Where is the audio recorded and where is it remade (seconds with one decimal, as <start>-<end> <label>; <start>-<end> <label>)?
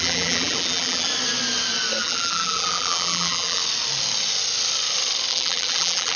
0.0-1.1 remade; 1.1-2.0 recorded; 2.0-3.6 remade; 3.6-5.3 recorded; 5.3-6.2 remade